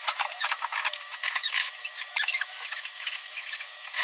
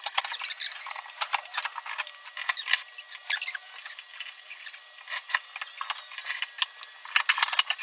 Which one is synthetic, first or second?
first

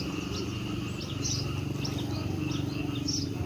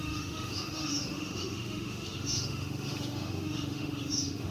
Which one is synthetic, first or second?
second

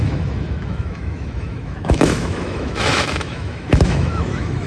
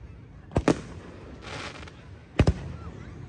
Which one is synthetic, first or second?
first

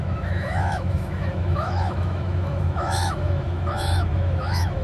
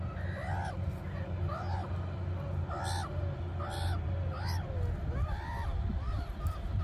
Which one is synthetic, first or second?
first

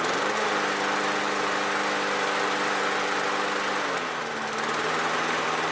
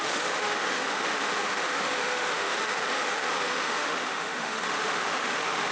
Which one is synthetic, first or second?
second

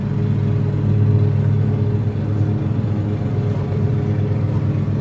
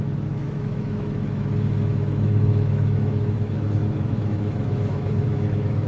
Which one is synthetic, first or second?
second